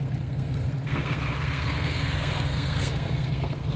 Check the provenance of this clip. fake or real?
fake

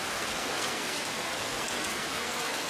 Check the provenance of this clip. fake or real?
fake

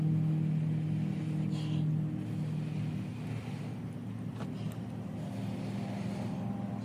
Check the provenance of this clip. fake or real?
real